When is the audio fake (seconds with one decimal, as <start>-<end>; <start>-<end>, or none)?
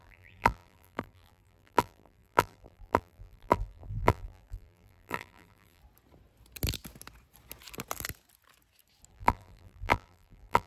0.0-5.8; 9.1-10.7